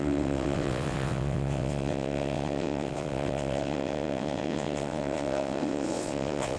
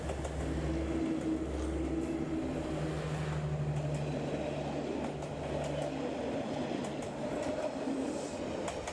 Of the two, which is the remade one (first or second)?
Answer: first